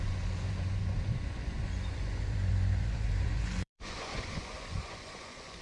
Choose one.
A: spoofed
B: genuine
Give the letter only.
A